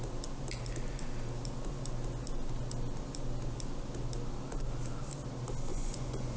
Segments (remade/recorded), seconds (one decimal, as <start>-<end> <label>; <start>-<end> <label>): 0.0-5.7 recorded; 5.7-6.4 remade